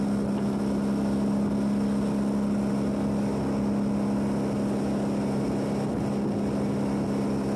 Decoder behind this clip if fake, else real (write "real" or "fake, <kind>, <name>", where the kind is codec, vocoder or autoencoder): real